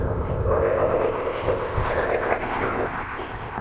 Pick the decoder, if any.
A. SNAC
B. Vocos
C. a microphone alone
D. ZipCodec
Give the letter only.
D